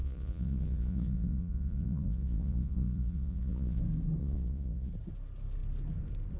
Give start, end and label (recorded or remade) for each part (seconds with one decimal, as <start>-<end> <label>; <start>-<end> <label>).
0.0-3.8 remade; 3.8-4.2 recorded; 4.2-4.9 remade; 4.9-6.4 recorded